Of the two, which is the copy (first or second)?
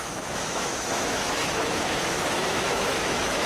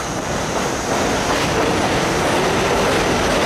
first